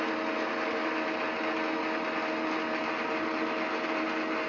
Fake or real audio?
real